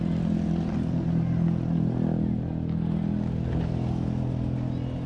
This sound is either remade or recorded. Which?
recorded